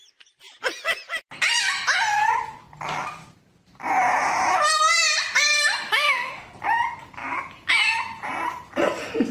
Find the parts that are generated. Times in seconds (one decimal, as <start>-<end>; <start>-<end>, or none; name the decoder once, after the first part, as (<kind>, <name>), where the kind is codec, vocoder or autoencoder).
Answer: 5.9-6.5 (autoencoder, DAC-VAE)